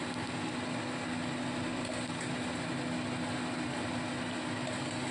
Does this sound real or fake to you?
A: real